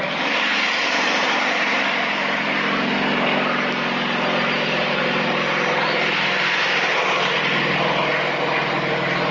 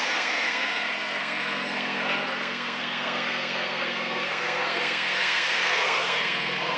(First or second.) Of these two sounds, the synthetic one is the second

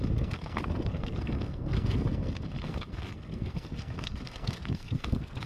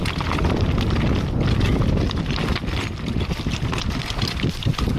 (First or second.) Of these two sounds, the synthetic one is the first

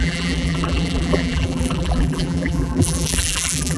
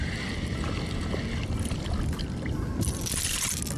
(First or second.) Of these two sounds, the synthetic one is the first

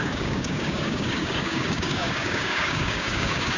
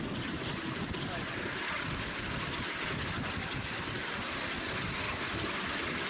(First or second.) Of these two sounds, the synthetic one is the first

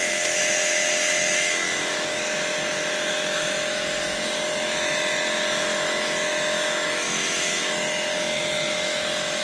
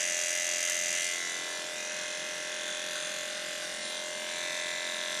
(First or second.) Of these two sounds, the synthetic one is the first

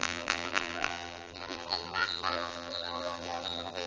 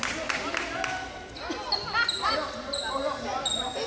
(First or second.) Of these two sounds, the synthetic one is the first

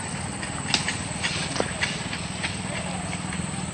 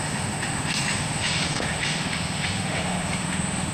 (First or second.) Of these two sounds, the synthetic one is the second